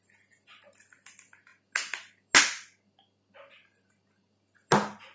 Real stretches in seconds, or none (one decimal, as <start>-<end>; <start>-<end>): 0.0-5.1